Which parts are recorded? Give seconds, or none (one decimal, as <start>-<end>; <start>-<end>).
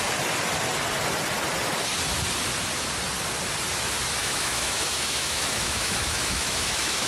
0.0-4.2